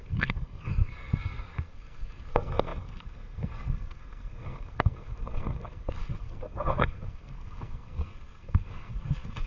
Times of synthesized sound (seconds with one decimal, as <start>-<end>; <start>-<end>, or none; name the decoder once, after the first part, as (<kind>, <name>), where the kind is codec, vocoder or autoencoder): 0.0-9.5 (codec, SNAC)